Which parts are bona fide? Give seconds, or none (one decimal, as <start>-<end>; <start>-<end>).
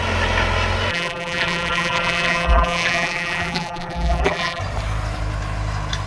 0.0-0.9; 4.6-6.1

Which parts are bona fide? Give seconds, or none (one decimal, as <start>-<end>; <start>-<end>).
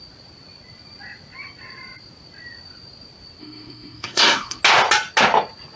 0.0-3.4; 4.6-5.8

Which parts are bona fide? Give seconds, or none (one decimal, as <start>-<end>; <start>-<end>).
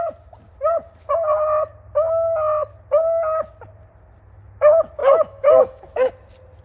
0.0-5.0; 6.1-6.6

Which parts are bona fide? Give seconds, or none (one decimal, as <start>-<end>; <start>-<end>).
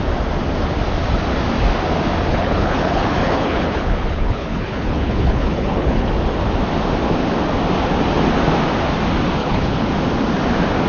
0.0-2.3; 6.1-9.4; 9.9-10.9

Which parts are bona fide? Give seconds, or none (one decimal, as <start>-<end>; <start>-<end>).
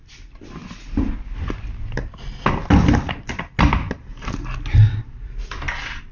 0.0-6.1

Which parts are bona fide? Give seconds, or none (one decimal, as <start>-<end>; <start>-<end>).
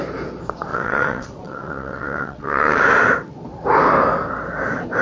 0.0-0.7; 2.8-5.0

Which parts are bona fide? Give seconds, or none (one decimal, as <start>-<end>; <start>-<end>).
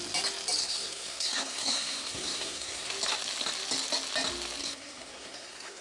0.0-0.6; 2.9-4.6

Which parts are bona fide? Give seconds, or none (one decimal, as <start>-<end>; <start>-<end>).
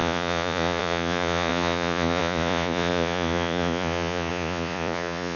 none